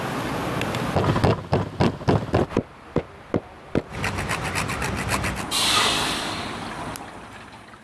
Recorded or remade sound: recorded